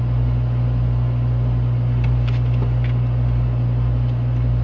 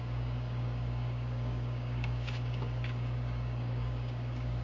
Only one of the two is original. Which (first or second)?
first